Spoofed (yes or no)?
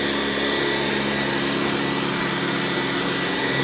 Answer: no